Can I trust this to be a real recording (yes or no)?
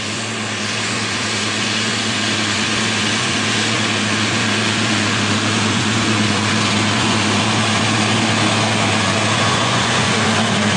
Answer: no